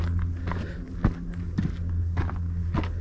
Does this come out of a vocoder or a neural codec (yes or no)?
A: no